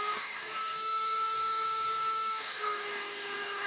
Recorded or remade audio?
remade